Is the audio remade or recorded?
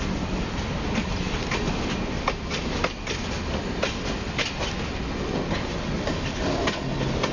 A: recorded